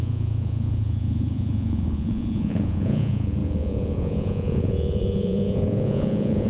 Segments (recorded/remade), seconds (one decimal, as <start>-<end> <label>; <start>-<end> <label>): 0.0-6.5 remade

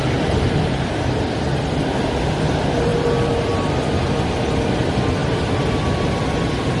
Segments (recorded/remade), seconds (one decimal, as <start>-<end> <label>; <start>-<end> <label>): 0.0-6.8 recorded